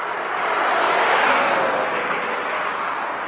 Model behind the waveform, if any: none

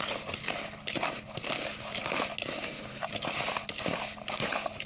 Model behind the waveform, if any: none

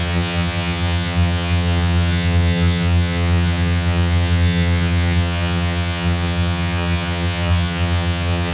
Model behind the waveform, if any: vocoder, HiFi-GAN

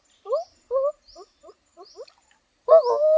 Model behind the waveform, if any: none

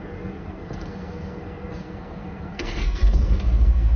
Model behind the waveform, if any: codec, SNAC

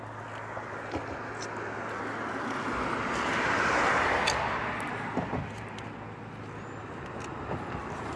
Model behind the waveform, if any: none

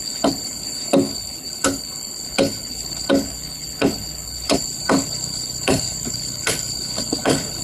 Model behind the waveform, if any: codec, HILCodec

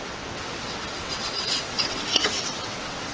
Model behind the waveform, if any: vocoder, WaveNeXt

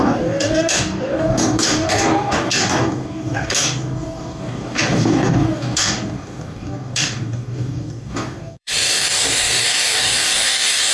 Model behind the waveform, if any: codec, DAC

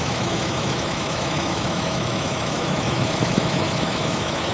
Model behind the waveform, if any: autoencoder, DAC-VAE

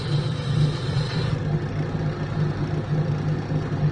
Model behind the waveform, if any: none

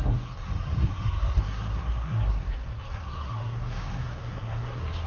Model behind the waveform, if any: codec, SNAC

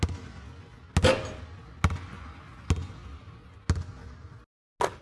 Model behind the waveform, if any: none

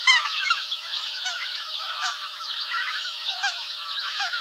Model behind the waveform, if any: autoencoder, DAC-VAE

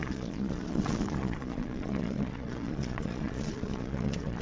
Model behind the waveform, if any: vocoder, Vocos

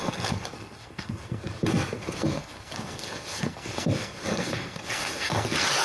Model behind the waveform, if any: codec, SNAC